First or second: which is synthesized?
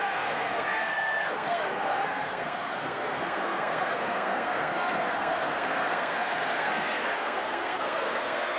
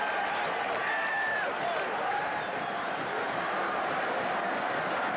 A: first